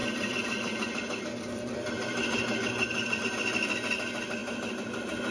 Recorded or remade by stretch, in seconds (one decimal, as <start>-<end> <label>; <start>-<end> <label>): 0.0-3.2 remade; 3.2-5.3 recorded